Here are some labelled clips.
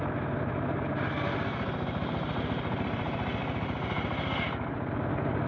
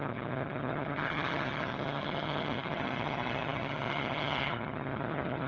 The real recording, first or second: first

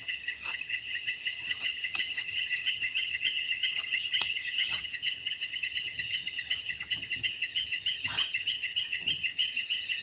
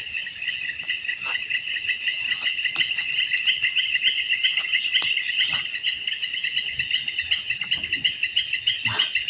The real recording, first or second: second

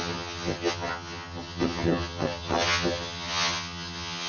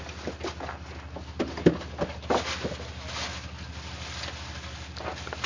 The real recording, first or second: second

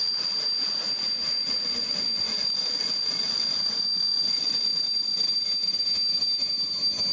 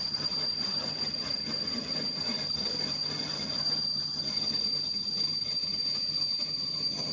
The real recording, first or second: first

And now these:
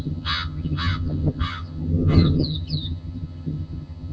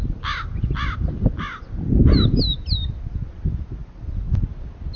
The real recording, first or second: second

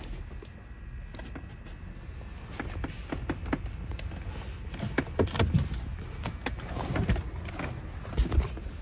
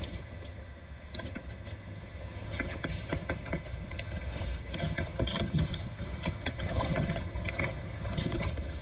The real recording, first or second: first